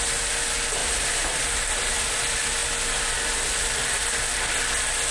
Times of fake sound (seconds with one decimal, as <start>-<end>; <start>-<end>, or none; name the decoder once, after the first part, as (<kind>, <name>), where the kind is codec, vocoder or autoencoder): 0.8-1.7 (vocoder, BigVGAN v2)